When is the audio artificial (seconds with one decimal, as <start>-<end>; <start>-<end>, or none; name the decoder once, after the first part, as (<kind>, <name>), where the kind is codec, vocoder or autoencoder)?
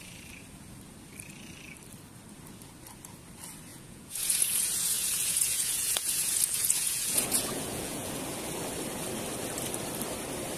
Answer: 3.7-8.1 (vocoder, Vocos)